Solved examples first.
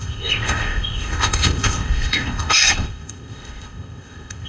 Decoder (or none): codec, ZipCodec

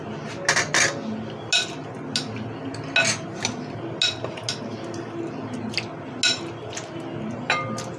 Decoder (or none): none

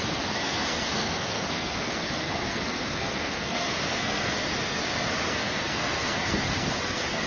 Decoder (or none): codec, SNAC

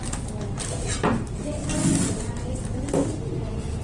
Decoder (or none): none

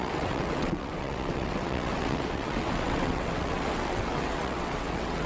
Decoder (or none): vocoder, WaveNeXt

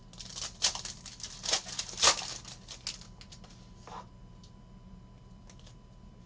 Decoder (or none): none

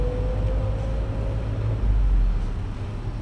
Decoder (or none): none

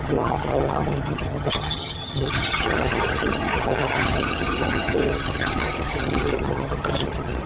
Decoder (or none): vocoder, HiFi-GAN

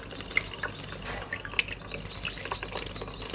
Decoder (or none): none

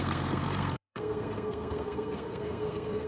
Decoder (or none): codec, SNAC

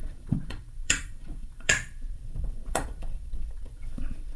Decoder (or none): vocoder, Vocos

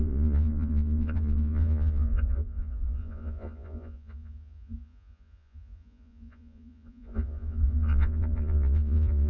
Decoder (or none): vocoder, Vocos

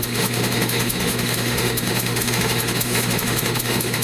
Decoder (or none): autoencoder, DAC-VAE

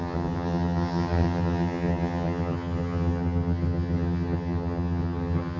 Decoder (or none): vocoder, HiFi-GAN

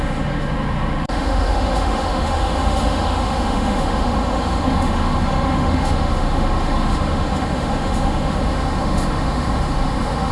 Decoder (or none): autoencoder, DAC-VAE